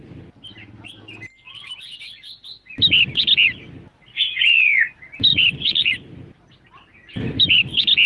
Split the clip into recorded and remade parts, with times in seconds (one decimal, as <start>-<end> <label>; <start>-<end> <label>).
0.0-5.3 recorded; 5.3-5.9 remade; 5.9-8.1 recorded